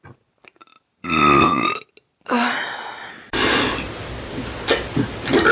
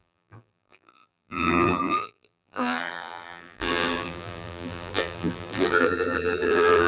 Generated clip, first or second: second